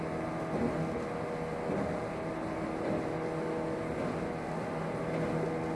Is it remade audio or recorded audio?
recorded